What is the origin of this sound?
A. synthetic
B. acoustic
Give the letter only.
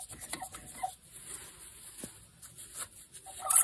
B